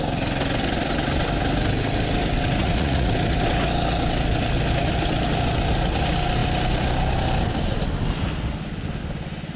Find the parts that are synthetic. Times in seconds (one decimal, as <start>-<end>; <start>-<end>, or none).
2.6-3.1